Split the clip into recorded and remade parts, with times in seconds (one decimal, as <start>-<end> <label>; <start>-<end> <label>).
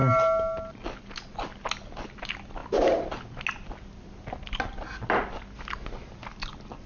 0.0-6.9 recorded